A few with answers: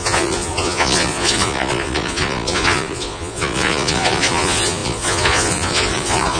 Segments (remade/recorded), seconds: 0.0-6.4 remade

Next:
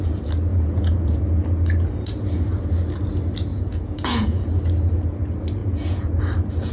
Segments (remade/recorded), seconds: 0.0-0.5 recorded; 0.5-1.2 remade; 1.2-3.5 recorded; 3.5-4.5 remade; 4.5-5.6 recorded; 5.6-6.2 remade; 6.2-6.7 recorded

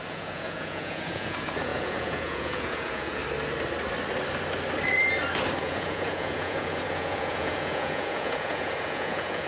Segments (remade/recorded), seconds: 0.0-3.2 remade; 3.2-5.6 recorded; 5.6-9.5 remade

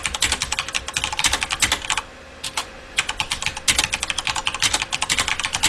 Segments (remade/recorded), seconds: 0.0-2.6 recorded; 2.6-3.2 remade; 3.2-5.7 recorded

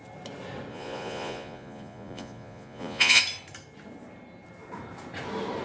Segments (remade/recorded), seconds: 0.0-0.7 recorded; 0.7-3.2 remade; 3.2-5.6 recorded

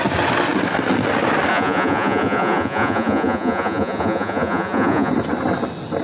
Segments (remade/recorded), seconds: 0.0-1.5 recorded; 1.5-5.1 remade; 5.1-6.0 recorded

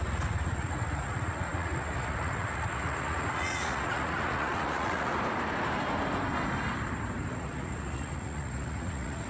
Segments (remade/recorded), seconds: 0.0-5.1 remade; 5.1-7.3 recorded; 7.3-9.3 remade

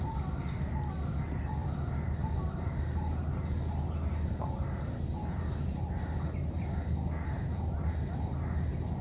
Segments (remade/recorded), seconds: 0.0-9.0 recorded